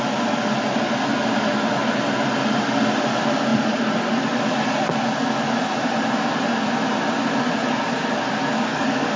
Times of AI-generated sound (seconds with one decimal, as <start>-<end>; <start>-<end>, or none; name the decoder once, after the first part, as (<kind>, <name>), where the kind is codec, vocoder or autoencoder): 8.7-9.2 (codec, DAC)